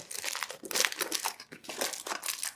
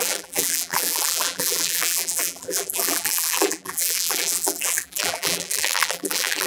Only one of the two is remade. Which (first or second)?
second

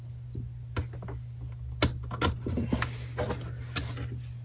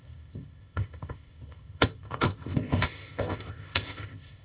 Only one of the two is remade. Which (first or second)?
second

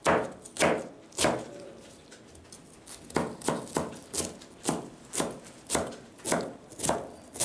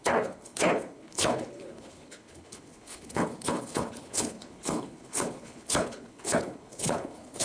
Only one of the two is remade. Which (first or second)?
second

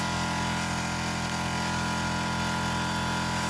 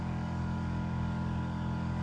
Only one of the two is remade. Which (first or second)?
second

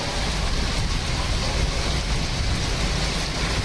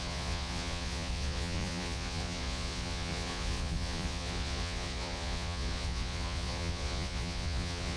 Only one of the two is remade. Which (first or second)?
second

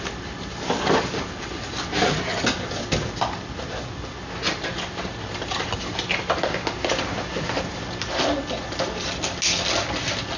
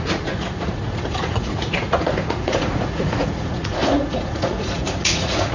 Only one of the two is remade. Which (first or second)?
second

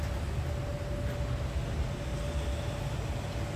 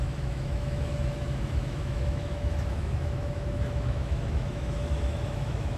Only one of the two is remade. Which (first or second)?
second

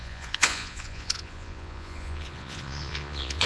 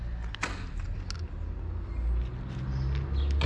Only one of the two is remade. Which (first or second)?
first